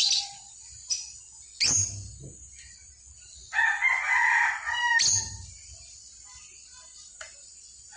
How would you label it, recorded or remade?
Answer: recorded